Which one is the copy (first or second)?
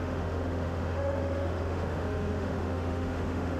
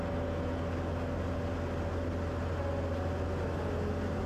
first